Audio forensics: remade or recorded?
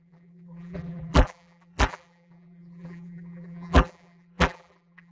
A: remade